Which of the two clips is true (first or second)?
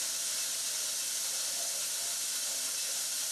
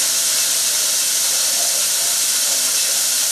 first